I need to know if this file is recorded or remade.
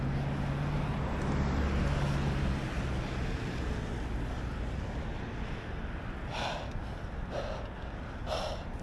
recorded